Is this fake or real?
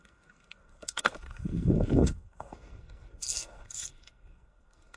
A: fake